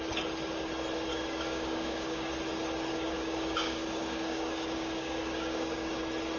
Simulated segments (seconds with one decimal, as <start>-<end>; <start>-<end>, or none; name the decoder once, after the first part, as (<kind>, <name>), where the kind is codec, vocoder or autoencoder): 1.1-2.3 (codec, DAC); 2.9-6.0